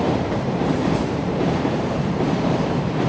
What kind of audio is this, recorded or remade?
remade